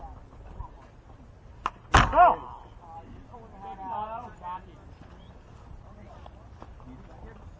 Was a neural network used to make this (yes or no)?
no